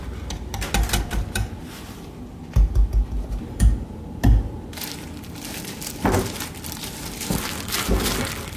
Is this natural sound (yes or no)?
yes